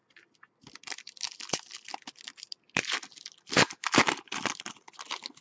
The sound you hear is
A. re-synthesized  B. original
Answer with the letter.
B